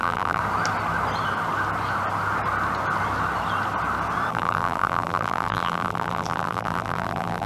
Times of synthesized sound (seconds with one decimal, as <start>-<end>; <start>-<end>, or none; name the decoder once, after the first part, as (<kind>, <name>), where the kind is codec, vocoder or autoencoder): 0.0-0.4 (vocoder, BigVGAN v2); 4.3-7.5